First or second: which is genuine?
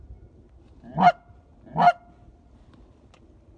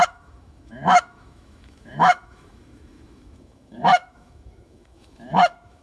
first